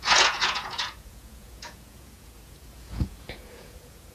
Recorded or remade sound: remade